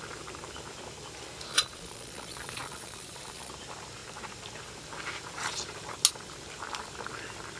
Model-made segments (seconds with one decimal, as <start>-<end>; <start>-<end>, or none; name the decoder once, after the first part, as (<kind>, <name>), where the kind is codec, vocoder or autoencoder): 1.5-3.5 (vocoder, Vocos)